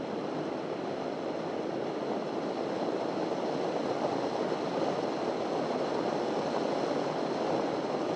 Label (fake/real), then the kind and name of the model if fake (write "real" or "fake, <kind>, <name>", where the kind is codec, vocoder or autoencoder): real